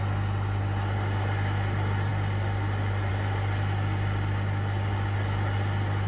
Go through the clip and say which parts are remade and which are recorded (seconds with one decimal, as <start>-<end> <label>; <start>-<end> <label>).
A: 0.0-6.1 recorded